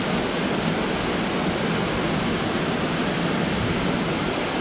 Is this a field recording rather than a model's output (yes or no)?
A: yes